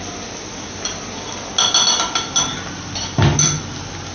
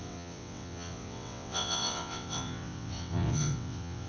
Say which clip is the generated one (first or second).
second